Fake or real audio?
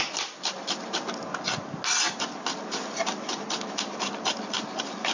real